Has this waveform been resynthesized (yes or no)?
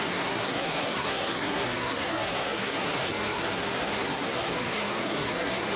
yes